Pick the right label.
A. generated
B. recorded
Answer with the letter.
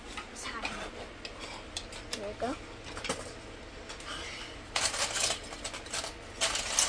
B